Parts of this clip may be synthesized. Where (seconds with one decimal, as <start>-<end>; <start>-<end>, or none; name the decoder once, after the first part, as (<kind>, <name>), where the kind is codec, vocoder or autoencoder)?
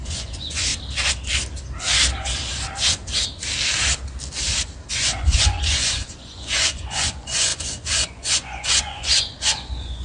0.0-0.7 (vocoder, Vocos); 4.9-10.0